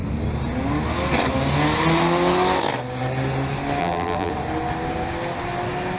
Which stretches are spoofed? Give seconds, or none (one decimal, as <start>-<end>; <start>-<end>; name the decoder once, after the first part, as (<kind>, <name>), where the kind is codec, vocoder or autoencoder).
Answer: 3.8-4.3 (vocoder, BigVGAN v2)